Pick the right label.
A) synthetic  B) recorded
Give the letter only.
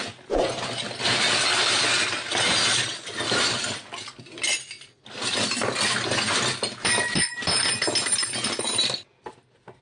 B